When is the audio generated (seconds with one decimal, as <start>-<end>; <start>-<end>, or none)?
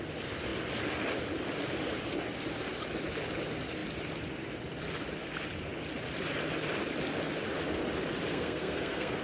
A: 8.3-9.2